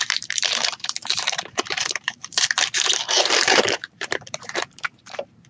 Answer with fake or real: fake